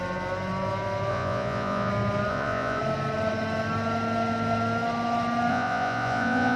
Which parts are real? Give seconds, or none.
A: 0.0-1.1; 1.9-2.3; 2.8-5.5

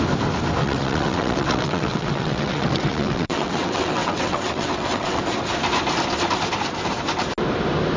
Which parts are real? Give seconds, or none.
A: 0.0-0.6; 5.2-8.0